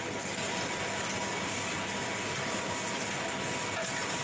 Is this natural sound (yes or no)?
yes